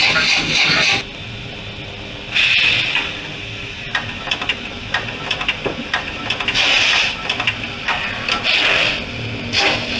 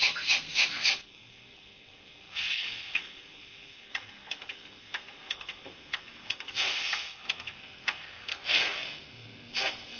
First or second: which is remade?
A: second